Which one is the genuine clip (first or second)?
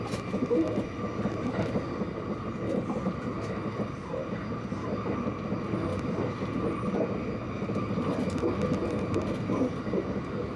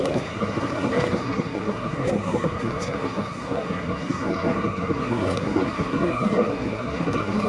first